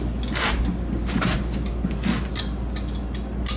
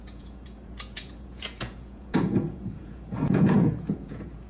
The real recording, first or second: first